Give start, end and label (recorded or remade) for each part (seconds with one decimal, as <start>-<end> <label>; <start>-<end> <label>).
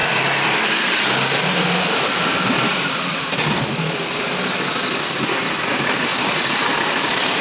0.0-2.1 remade; 2.1-2.7 recorded; 2.7-4.0 remade; 4.0-7.4 recorded